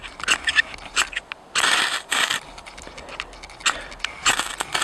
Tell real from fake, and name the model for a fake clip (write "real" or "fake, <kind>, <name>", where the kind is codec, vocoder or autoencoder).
real